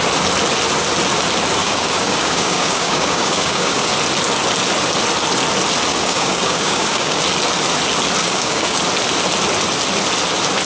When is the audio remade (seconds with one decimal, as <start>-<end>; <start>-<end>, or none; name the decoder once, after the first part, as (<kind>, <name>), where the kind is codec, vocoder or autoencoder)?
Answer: 1.6-3.9 (codec, DAC); 5.9-7.2; 8.2-8.8